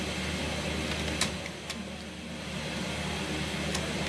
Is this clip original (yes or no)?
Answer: yes